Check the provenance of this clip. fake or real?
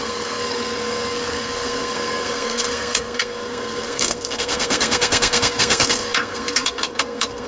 fake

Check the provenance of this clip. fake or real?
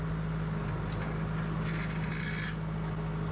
real